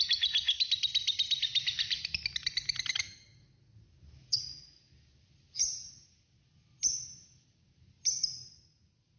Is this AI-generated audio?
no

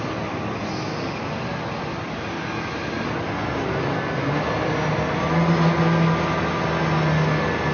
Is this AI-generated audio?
no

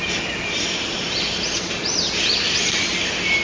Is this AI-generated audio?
no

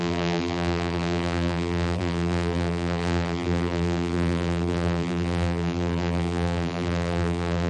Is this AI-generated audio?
yes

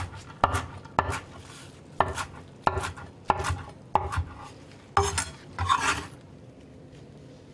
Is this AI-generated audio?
no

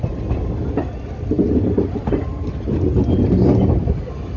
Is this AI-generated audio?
no